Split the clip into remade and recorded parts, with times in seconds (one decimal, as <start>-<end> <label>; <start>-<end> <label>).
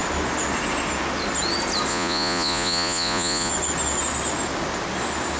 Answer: 0.0-1.9 recorded; 1.9-3.5 remade; 3.5-5.4 recorded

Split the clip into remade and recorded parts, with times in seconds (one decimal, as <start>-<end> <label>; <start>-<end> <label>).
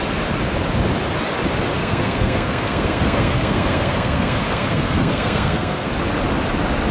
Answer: 0.0-1.8 recorded; 1.8-5.9 remade; 5.9-6.9 recorded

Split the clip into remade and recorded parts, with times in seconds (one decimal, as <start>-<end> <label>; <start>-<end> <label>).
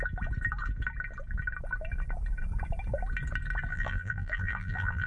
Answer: 0.0-3.7 recorded; 3.7-5.1 remade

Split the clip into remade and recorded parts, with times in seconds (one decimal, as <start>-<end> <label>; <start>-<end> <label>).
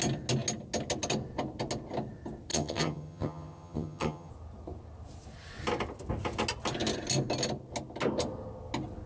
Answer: 0.0-2.5 recorded; 2.5-4.3 remade; 4.3-9.1 recorded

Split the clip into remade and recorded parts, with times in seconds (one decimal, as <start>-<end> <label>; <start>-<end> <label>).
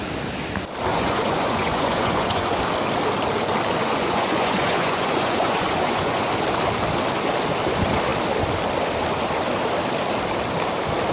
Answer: 0.0-0.9 recorded; 0.9-2.6 remade; 2.6-3.8 recorded; 3.8-6.3 remade; 6.3-11.1 recorded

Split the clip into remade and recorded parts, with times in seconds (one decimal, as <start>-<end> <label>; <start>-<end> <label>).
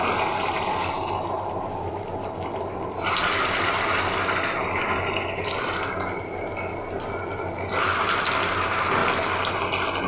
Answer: 0.0-10.1 recorded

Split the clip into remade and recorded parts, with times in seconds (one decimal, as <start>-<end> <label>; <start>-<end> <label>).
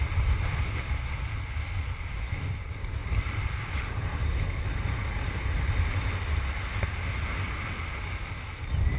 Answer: 0.0-3.0 recorded; 3.0-4.2 remade; 4.2-9.0 recorded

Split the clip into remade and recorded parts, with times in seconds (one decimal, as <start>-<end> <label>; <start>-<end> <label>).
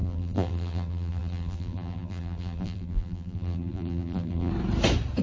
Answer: 0.0-4.5 remade; 4.5-5.2 recorded